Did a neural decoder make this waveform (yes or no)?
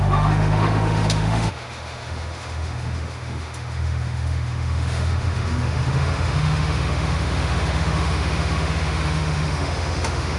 yes